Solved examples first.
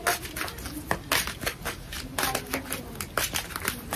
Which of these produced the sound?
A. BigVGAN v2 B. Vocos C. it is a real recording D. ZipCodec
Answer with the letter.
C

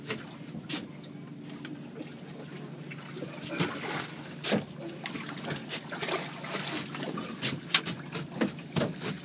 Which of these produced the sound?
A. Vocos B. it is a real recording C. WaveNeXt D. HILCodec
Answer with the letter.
B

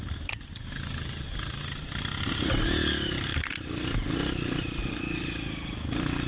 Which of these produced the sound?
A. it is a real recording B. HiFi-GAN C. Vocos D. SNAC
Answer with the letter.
A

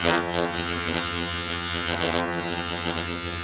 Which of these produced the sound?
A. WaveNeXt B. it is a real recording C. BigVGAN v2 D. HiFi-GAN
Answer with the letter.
D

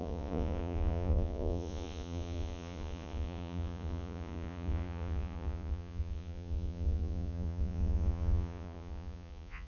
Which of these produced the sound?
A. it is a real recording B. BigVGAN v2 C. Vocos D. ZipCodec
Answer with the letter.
C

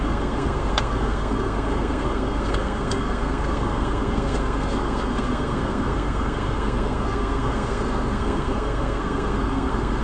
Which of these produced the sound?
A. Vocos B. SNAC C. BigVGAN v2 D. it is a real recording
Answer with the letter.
B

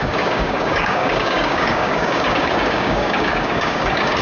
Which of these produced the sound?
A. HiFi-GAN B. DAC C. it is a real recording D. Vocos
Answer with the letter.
B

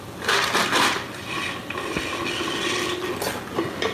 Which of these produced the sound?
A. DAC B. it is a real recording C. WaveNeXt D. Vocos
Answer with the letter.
B